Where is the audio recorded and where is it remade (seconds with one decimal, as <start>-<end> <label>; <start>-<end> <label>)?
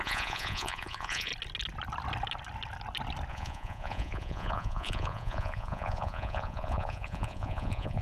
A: 0.0-1.3 remade; 1.3-3.3 recorded; 3.3-8.0 remade